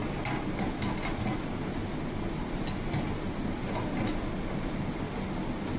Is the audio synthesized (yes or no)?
no